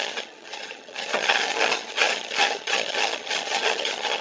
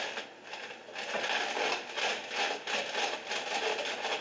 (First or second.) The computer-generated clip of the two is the first